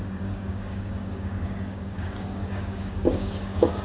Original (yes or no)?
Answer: no